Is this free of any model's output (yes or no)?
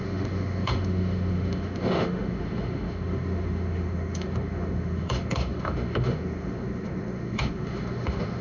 no